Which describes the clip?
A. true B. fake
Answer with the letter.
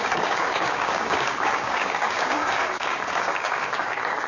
B